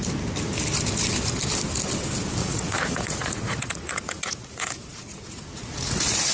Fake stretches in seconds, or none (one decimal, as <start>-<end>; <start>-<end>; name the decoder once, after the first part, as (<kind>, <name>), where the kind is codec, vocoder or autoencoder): 2.4-6.3 (vocoder, Vocos)